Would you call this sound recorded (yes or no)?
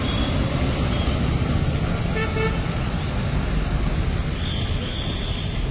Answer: yes